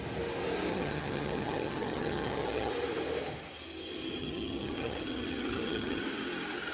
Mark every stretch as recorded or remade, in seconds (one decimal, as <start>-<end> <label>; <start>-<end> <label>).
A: 0.0-0.7 recorded; 0.7-2.7 remade; 2.7-4.2 recorded; 4.2-6.0 remade; 6.0-6.7 recorded